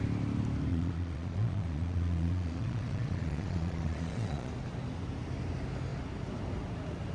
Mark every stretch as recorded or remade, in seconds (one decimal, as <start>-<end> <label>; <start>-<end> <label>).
0.0-0.7 recorded; 0.7-4.5 remade; 4.5-7.1 recorded